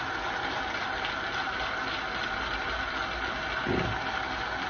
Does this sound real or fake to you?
real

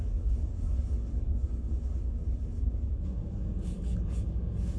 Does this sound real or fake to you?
fake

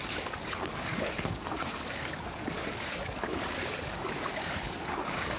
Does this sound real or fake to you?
fake